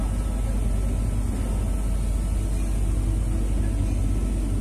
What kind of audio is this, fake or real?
real